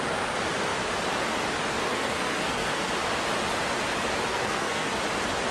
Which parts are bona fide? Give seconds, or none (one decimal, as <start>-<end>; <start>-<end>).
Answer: 0.0-1.9; 2.9-4.3; 5.0-5.5